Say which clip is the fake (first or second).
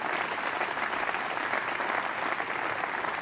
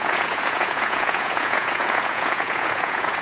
second